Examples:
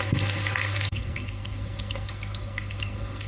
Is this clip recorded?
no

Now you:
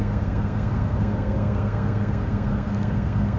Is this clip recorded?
no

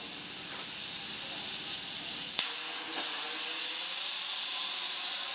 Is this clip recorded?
yes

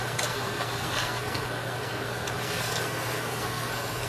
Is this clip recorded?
no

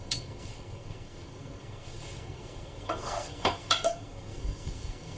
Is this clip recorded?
no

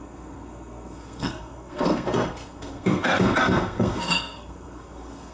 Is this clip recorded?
no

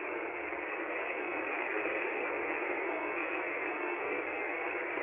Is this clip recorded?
no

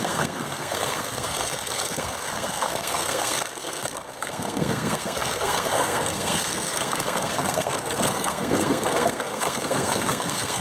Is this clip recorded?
no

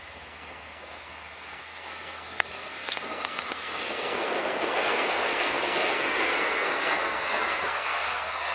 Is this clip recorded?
no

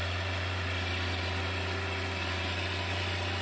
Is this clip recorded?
yes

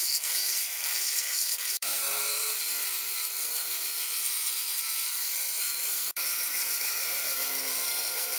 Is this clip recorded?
no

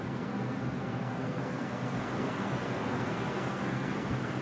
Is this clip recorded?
no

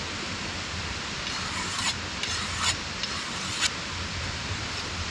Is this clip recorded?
yes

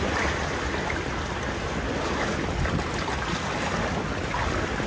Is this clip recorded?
yes